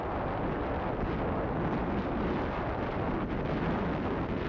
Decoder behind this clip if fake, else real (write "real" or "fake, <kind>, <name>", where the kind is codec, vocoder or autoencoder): real